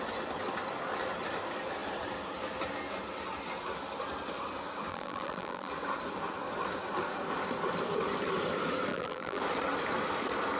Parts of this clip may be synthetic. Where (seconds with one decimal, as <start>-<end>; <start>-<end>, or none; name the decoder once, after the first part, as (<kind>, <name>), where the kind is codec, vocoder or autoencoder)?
4.9-5.7 (vocoder, BigVGAN v2); 8.9-9.4